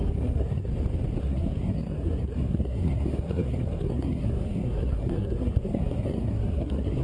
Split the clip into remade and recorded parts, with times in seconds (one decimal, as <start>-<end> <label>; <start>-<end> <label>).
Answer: 0.0-0.7 remade; 0.7-1.2 recorded; 1.2-7.0 remade